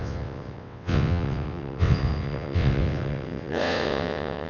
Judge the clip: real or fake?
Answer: fake